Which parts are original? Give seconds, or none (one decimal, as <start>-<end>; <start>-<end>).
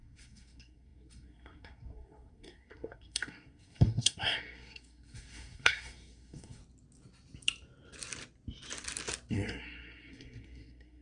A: 6.6-9.3